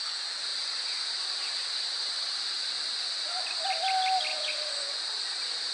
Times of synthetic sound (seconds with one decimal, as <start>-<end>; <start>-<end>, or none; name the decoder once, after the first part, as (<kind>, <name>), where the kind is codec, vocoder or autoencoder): 4.3-5.0 (vocoder, Vocos)